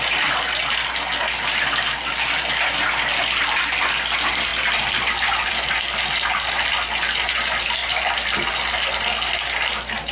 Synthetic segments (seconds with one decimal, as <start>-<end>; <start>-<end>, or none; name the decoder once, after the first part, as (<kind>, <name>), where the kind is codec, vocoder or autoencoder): none